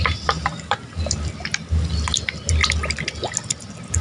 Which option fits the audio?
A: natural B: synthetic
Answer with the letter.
A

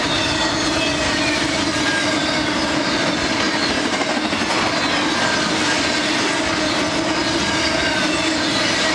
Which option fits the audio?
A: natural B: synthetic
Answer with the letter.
A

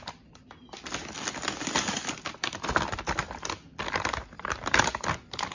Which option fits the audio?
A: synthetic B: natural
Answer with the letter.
B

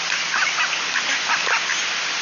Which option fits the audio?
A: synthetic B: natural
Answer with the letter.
B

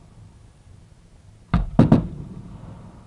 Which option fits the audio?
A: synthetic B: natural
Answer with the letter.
B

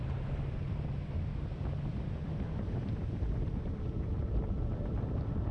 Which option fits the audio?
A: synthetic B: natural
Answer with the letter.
A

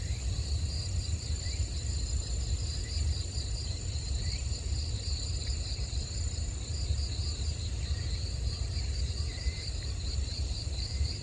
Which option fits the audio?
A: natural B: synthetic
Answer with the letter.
B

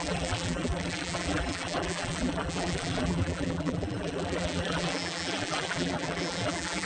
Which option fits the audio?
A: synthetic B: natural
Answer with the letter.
A